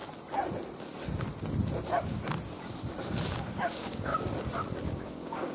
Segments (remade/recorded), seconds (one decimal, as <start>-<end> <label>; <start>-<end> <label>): 0.0-3.3 recorded; 3.3-4.1 remade; 4.1-4.8 recorded; 4.8-5.5 remade